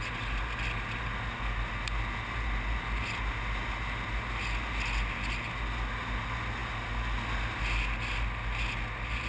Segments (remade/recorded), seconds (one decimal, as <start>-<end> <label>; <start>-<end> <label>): 0.0-9.3 recorded